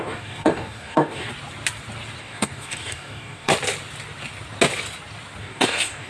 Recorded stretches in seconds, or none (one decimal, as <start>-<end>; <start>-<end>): 1.3-2.2; 3.5-5.4